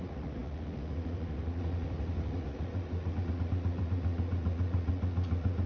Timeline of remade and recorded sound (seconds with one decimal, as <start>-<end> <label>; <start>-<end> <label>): 0.0-5.7 remade